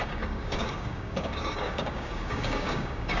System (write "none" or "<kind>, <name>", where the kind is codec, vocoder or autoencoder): codec, DAC